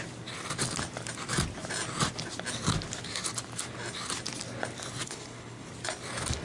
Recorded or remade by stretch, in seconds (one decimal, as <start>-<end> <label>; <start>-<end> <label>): 0.0-5.0 recorded; 5.0-5.7 remade; 5.7-6.4 recorded